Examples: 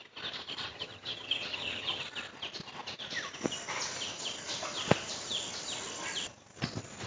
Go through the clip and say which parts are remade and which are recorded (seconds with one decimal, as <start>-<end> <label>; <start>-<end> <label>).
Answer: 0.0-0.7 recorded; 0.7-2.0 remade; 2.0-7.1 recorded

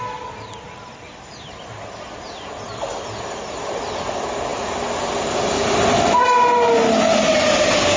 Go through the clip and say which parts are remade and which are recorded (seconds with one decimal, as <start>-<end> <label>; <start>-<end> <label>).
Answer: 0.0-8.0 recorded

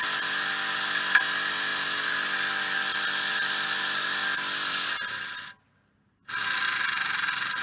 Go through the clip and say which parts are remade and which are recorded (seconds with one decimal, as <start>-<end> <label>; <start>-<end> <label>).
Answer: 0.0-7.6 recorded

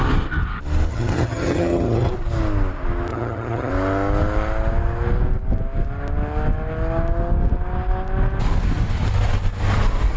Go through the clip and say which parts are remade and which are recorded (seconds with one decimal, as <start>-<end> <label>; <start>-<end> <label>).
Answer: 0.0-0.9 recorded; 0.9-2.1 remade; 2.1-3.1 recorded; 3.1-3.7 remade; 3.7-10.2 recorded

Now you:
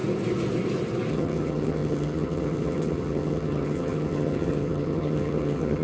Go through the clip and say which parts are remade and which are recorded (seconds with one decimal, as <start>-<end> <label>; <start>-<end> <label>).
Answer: 0.0-1.1 recorded; 1.1-5.8 remade

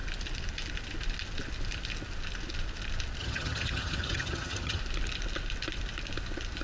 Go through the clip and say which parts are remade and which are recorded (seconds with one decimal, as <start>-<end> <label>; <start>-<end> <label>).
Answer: 0.0-3.2 recorded; 3.2-4.8 remade; 4.8-6.6 recorded

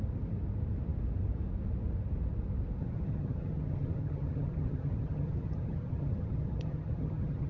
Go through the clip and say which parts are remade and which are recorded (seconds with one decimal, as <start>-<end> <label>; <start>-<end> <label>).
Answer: 0.0-2.8 recorded; 2.8-7.5 remade

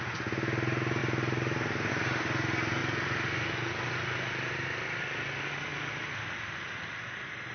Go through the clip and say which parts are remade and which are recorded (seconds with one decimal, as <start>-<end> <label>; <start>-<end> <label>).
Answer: 0.0-7.5 recorded